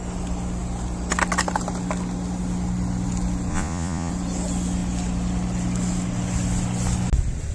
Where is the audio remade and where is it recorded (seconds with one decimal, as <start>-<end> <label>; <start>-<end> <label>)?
0.0-3.5 recorded; 3.5-4.1 remade; 4.1-7.5 recorded

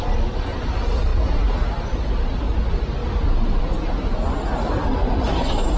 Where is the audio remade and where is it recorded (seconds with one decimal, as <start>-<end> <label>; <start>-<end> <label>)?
0.0-5.8 recorded

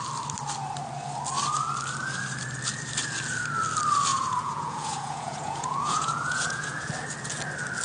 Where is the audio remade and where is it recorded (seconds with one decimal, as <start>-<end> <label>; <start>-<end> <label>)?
0.0-4.1 recorded; 4.1-6.9 remade; 6.9-7.8 recorded